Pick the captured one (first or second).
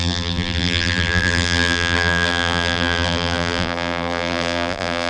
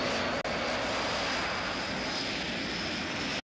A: second